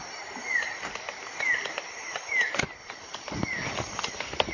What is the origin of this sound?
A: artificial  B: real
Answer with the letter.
B